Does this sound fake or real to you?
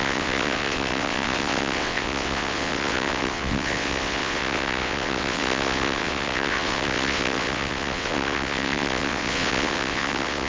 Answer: fake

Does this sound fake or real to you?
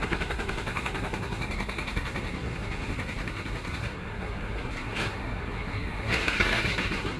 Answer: fake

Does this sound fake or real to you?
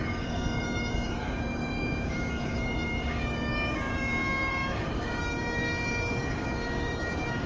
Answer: fake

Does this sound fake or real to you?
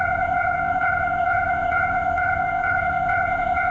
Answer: fake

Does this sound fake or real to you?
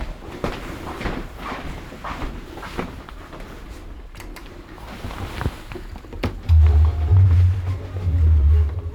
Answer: fake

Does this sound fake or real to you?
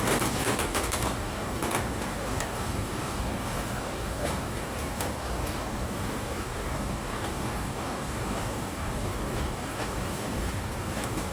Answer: fake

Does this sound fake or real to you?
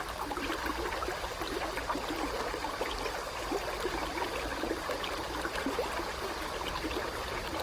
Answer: real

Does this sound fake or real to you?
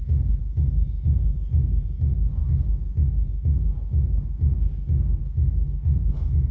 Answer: fake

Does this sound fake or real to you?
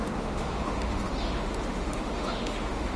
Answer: fake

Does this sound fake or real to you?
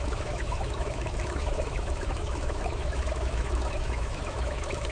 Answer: fake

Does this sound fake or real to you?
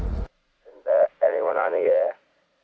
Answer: fake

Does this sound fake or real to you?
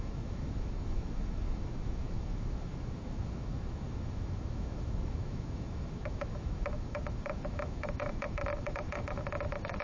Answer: fake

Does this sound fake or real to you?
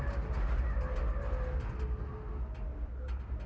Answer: real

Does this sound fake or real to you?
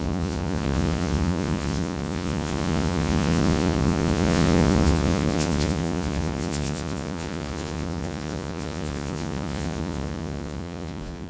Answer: fake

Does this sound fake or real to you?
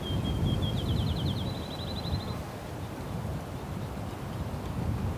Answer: real